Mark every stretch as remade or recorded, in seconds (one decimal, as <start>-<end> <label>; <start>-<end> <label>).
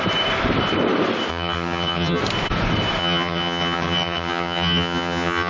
0.0-1.3 recorded; 1.3-2.2 remade; 2.2-3.0 recorded; 3.0-5.5 remade